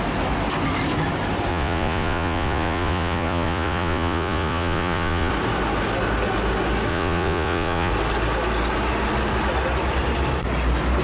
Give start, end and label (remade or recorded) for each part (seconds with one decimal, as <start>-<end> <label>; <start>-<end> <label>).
0.0-1.5 recorded; 1.5-5.3 remade; 5.3-6.9 recorded; 6.9-7.9 remade; 7.9-11.0 recorded